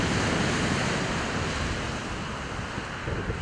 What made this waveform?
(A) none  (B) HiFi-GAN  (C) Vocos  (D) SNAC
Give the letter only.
A